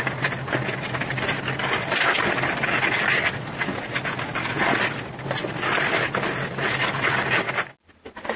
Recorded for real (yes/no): yes